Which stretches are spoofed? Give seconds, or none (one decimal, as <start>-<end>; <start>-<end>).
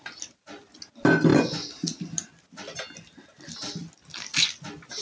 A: none